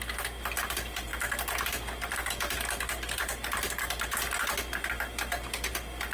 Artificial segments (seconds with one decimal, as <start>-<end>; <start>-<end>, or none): none